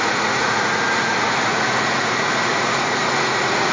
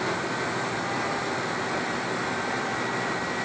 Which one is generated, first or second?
first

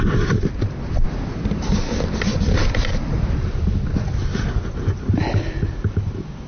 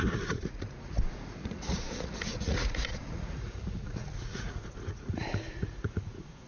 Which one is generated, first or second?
second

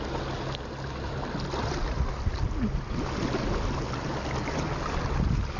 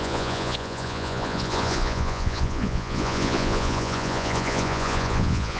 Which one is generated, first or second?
second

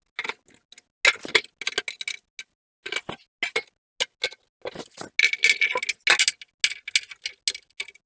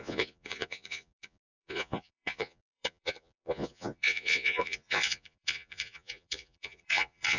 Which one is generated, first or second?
second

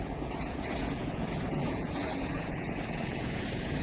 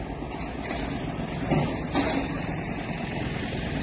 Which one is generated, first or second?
first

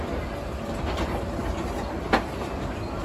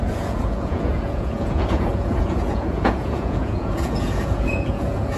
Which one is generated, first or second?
second